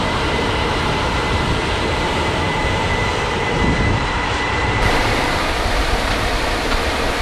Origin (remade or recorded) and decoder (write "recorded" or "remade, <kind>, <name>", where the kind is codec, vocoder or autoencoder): remade, vocoder, BigVGAN v2